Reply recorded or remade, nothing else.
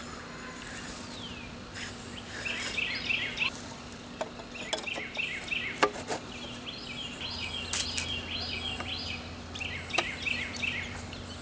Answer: recorded